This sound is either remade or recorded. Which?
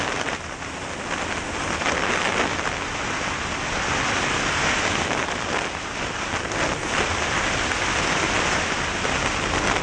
recorded